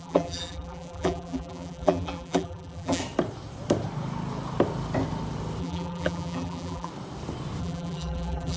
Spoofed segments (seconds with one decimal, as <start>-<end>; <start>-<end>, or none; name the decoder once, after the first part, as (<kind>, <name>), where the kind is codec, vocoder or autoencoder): 0.0-3.0 (vocoder, BigVGAN v2); 5.6-6.9; 7.6-8.6